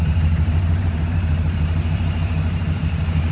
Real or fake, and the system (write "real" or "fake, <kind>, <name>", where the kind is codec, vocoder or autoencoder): fake, vocoder, BigVGAN v2